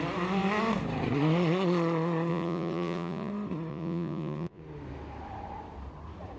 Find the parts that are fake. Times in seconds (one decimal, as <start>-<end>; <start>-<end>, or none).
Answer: 2.3-3.3; 3.7-4.6